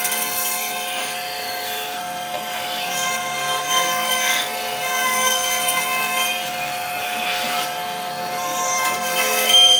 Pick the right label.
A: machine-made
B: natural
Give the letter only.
A